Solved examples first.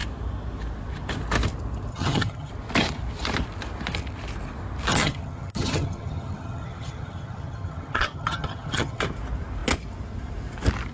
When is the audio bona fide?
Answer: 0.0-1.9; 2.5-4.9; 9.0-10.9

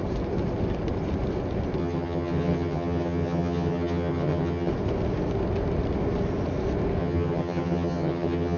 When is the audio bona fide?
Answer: 0.0-1.8; 4.7-7.0

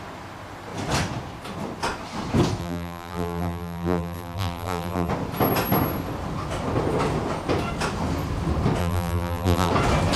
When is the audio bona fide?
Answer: 0.0-2.6; 5.1-8.8; 9.7-10.2

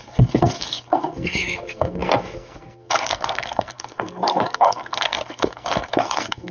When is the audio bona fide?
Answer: none

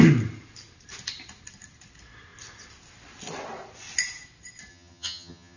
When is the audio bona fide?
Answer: 0.0-4.7

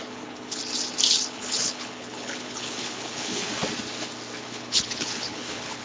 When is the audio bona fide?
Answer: 0.6-1.1; 3.6-4.4

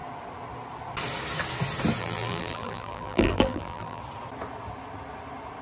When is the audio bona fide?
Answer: 0.0-2.0; 4.0-5.6